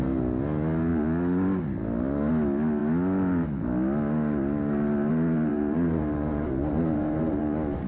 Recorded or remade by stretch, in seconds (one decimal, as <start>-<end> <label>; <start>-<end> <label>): 0.0-5.5 recorded; 5.5-7.4 remade; 7.4-7.9 recorded